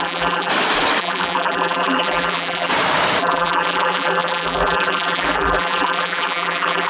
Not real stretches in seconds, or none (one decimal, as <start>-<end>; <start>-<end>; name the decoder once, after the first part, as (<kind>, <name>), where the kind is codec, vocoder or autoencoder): 0.0-0.5 (vocoder, BigVGAN v2); 1.0-2.7; 3.2-6.9